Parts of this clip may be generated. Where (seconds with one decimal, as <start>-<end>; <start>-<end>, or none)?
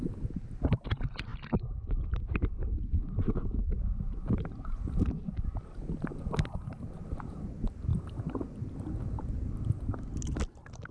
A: none